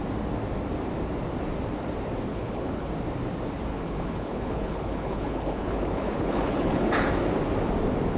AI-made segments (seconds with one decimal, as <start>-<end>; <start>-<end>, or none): 2.3-2.9; 3.7-7.1